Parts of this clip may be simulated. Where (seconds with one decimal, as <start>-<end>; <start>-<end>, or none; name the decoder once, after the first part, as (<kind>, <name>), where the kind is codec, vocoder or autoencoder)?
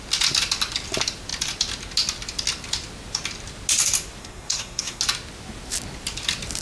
4.2-5.0 (codec, SNAC)